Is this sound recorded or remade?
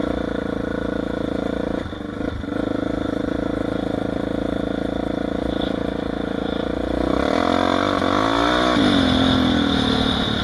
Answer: recorded